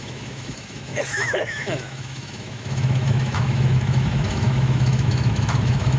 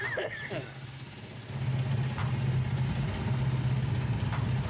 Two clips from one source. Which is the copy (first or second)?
first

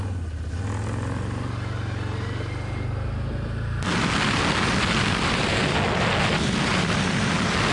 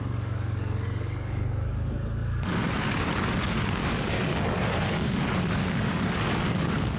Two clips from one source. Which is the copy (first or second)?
second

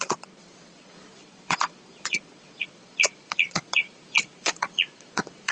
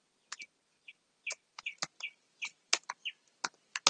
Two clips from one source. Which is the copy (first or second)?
first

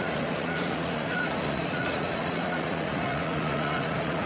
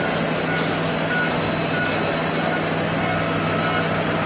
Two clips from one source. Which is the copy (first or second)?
first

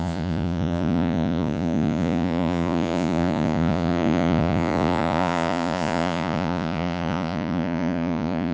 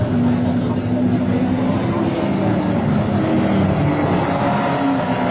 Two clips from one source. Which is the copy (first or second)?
first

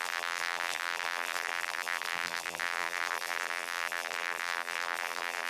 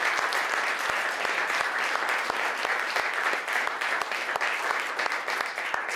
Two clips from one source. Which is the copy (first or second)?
first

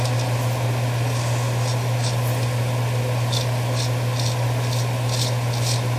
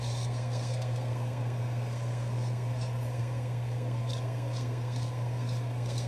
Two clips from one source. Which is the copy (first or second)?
second